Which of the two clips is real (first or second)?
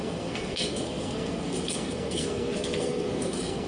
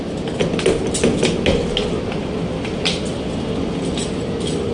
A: second